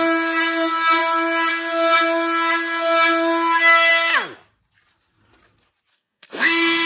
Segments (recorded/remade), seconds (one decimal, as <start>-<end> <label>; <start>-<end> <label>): 0.0-5.9 recorded; 5.9-6.9 remade